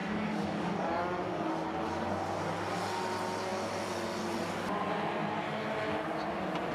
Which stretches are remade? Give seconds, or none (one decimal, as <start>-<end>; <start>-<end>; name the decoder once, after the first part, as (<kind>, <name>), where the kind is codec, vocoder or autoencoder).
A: 0.0-1.5 (codec, DAC)